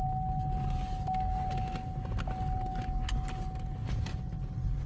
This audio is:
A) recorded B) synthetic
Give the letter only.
A